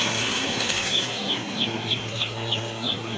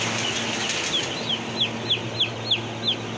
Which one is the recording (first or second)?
second